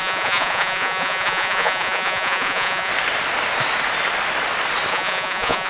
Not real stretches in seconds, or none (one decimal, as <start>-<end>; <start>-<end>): 0.0-2.9; 4.9-5.7